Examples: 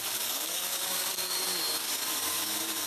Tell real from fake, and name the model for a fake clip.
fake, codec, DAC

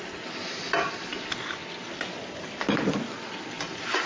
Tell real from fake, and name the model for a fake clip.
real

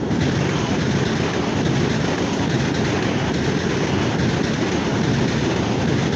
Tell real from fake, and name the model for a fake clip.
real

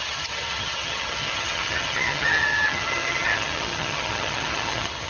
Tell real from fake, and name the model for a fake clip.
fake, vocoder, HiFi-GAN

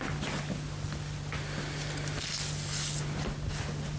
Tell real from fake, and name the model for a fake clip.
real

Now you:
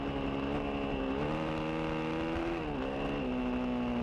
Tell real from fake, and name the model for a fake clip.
real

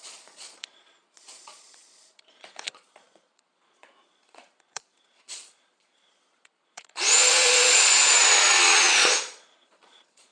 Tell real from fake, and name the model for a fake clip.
fake, vocoder, Vocos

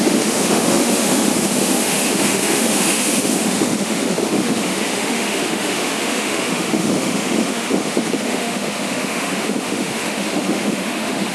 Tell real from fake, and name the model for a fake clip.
fake, autoencoder, DAC-VAE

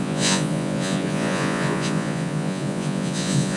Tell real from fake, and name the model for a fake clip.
fake, vocoder, Vocos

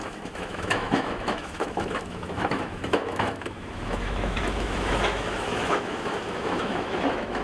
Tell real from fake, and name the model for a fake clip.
fake, autoencoder, DAC-VAE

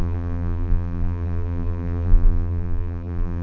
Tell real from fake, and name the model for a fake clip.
fake, vocoder, BigVGAN v2